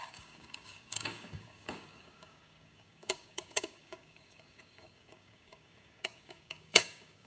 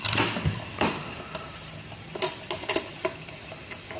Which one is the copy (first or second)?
first